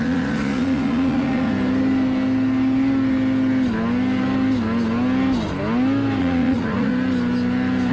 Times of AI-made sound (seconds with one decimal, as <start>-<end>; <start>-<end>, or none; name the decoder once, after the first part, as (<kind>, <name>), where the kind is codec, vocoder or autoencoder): 0.0-1.5 (vocoder, Vocos); 6.2-6.9